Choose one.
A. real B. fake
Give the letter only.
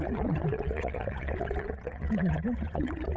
B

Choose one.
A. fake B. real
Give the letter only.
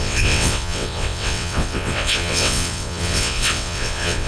A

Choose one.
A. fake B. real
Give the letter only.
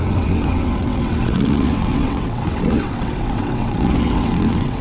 A